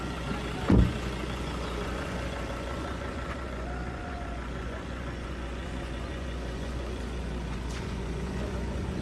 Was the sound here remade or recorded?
remade